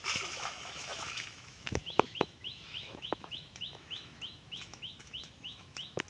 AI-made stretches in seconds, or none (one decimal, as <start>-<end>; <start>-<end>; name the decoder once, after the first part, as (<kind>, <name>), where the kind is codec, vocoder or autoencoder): 0.0-6.1 (autoencoder, DAC-VAE)